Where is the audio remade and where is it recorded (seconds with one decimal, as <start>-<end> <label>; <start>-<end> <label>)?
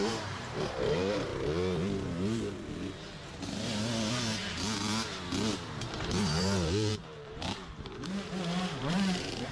0.0-1.3 remade; 1.3-6.0 recorded; 6.0-9.5 remade